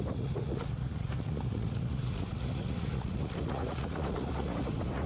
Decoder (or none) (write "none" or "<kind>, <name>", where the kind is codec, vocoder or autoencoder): vocoder, Vocos